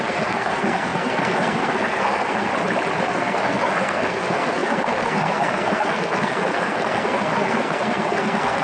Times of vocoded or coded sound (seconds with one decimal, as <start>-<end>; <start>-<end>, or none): 0.0-2.5; 3.0-8.6